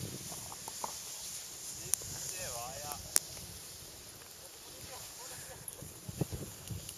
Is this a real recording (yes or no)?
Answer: yes